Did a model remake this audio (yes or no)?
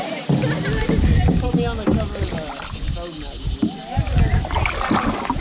no